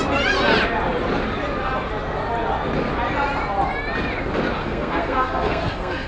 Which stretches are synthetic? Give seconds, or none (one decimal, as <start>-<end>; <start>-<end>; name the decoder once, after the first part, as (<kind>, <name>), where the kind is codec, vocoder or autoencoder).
4.6-6.1 (codec, SNAC)